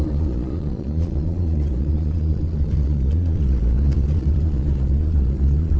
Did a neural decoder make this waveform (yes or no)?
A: yes